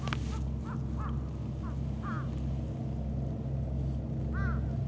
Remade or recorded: recorded